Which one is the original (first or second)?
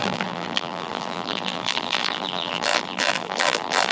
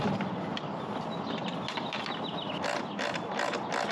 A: second